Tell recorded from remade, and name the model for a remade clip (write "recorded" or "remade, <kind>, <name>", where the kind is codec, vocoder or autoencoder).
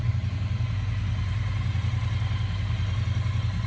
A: recorded